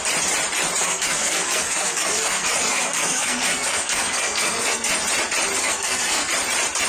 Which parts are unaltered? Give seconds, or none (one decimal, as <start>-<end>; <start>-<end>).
0.0-0.8; 4.9-5.6; 6.3-6.9

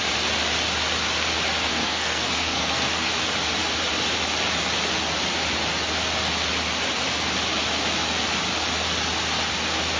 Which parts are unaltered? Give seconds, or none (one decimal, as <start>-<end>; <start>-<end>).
0.0-1.7; 3.1-10.0